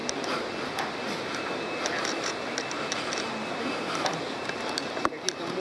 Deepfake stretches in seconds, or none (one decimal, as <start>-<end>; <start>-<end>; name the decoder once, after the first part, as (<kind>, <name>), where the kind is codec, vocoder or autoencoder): 2.0-5.6 (vocoder, BigVGAN v2)